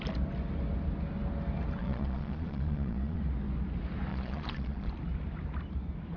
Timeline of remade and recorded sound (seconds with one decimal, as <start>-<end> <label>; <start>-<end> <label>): 0.0-1.8 recorded; 1.8-3.2 remade; 3.2-4.1 recorded; 4.1-4.9 remade; 4.9-6.2 recorded